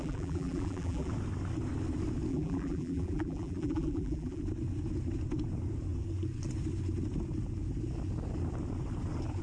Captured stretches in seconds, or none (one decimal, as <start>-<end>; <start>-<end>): 1.1-2.3; 4.4-9.4